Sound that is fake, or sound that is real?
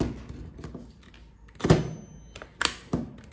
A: real